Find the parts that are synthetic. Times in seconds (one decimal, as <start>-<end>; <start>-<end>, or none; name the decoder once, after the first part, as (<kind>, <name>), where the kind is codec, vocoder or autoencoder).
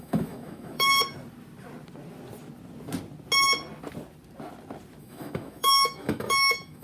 0.0-1.0 (autoencoder, DAC-VAE); 5.0-6.8